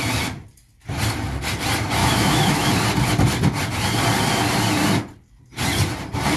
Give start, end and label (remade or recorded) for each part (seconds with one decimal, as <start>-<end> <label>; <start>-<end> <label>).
0.0-2.0 recorded; 2.0-2.7 remade; 2.7-6.4 recorded